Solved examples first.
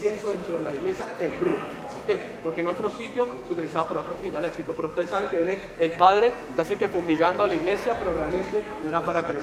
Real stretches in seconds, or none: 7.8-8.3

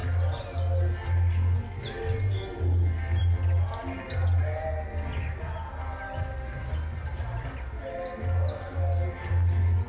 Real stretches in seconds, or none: 0.0-9.9

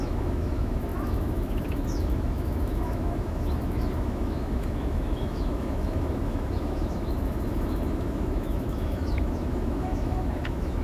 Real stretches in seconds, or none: none